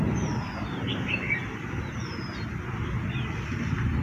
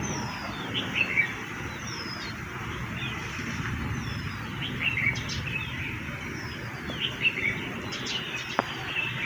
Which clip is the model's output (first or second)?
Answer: second